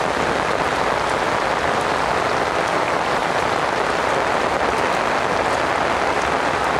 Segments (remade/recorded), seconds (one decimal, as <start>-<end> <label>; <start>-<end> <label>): 0.0-6.8 recorded